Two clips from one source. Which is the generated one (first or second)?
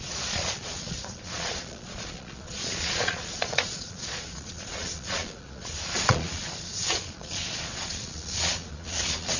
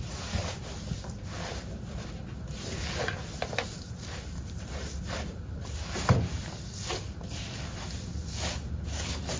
first